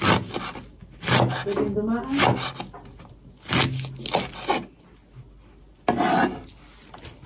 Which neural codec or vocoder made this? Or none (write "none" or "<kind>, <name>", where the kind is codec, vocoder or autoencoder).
none